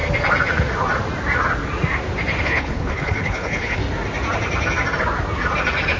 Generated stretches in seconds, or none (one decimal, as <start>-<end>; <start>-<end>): 2.4-3.8